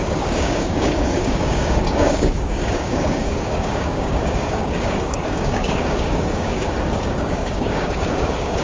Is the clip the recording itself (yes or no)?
no